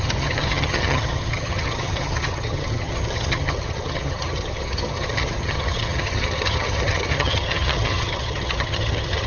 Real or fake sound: fake